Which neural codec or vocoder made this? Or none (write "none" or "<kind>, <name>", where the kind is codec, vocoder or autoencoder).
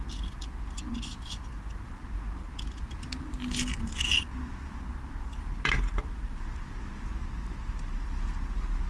none